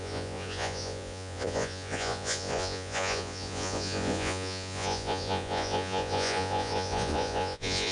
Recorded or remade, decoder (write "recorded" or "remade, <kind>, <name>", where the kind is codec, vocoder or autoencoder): remade, vocoder, Vocos